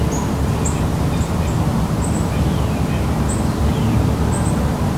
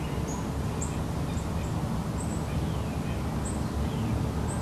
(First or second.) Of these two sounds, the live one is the second